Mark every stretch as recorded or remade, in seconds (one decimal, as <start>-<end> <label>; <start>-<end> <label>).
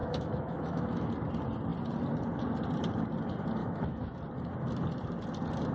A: 0.0-1.1 remade; 1.1-3.6 recorded; 3.6-4.2 remade; 4.2-5.7 recorded